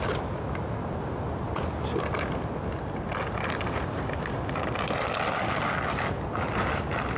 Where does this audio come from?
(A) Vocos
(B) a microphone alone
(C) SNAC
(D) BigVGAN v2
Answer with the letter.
B